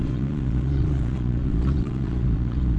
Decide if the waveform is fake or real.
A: fake